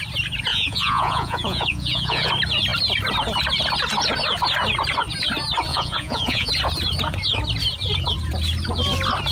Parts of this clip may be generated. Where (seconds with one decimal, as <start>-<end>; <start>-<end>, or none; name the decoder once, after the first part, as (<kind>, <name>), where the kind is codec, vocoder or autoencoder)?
0.5-2.3 (vocoder, Vocos); 5.7-6.5